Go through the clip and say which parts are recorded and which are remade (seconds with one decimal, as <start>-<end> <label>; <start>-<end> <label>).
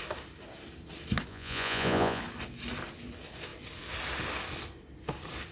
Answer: 0.0-1.3 recorded; 1.3-2.2 remade; 2.2-5.5 recorded